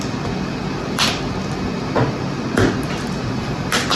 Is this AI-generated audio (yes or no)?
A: yes